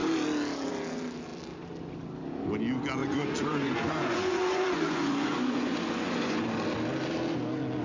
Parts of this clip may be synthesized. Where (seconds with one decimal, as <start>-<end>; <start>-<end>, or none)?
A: 3.0-6.4